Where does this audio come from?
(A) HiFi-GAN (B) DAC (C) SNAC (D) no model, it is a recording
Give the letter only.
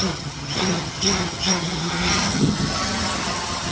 A